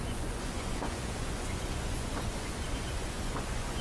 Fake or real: fake